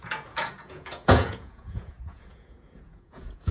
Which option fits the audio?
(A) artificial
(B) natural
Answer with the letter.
A